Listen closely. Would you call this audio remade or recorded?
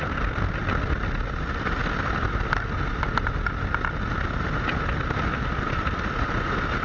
recorded